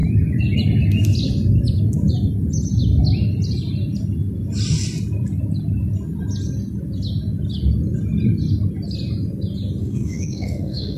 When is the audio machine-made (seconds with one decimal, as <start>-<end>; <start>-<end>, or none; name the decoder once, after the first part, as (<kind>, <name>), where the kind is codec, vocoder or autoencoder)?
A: 9.8-11.0 (autoencoder, DAC-VAE)